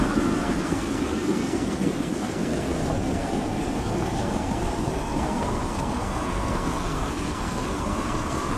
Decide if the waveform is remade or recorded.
remade